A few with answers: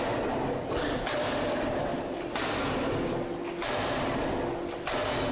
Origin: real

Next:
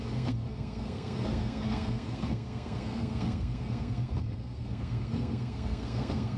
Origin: fake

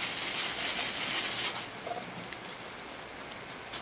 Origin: real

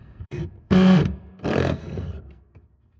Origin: fake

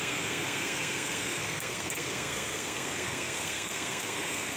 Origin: fake